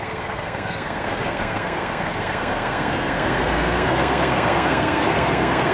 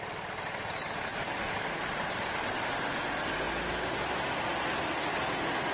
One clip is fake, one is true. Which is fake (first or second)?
first